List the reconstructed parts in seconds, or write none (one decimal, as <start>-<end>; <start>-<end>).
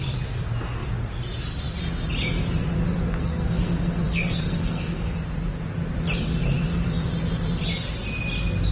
3.1-5.2